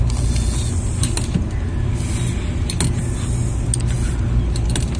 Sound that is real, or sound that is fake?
real